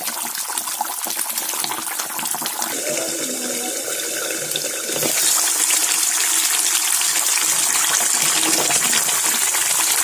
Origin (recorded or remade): recorded